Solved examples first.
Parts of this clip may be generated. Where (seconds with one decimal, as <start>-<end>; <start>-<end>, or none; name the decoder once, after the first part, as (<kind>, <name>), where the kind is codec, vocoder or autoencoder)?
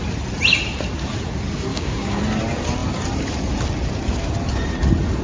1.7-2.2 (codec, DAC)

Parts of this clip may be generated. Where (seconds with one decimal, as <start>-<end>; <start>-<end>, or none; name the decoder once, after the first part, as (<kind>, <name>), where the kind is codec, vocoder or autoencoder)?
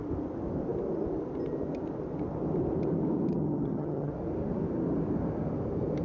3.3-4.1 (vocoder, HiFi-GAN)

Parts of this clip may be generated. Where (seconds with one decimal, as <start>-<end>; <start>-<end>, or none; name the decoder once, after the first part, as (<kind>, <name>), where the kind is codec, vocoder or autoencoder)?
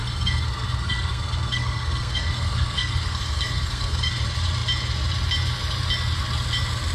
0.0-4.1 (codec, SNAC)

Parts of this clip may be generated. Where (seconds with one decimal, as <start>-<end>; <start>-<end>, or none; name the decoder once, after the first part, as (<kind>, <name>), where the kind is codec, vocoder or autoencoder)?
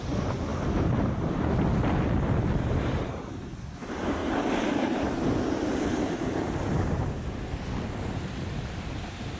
4.2-5.1 (vocoder, BigVGAN v2); 5.9-7.4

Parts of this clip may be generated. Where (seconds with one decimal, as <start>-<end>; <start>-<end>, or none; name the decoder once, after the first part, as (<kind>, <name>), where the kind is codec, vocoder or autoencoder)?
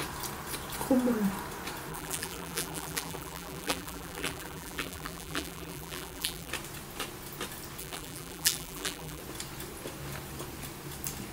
1.9-6.5 (vocoder, BigVGAN v2); 7.8-9.2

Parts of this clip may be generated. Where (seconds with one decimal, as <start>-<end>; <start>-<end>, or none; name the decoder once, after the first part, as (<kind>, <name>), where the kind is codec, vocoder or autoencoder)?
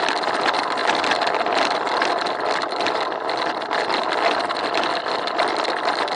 none